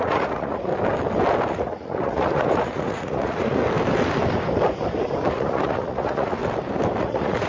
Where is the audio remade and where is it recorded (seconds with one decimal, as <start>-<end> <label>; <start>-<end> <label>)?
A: 0.0-0.7 remade; 0.7-1.5 recorded; 1.5-3.6 remade; 3.6-5.3 recorded; 5.3-6.4 remade; 6.4-7.0 recorded; 7.0-7.5 remade